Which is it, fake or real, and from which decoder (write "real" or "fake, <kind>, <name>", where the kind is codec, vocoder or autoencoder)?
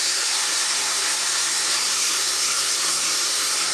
fake, codec, SNAC